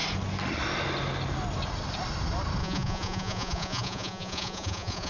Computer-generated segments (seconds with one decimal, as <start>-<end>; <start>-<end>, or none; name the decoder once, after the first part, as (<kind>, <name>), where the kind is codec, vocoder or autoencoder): 2.6-5.1 (vocoder, Vocos)